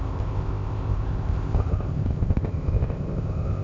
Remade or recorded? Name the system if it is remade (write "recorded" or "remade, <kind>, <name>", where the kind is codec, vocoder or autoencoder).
remade, codec, ZipCodec